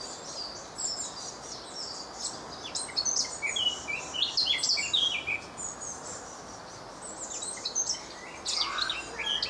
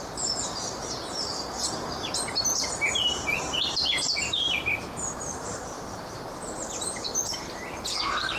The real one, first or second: first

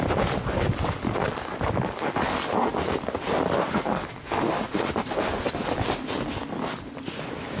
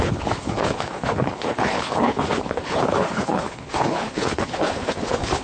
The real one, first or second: first